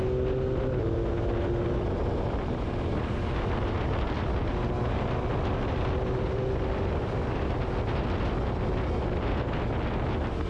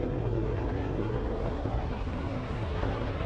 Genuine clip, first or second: first